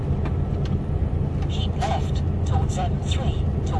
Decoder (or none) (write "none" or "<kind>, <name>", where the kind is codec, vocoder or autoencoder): none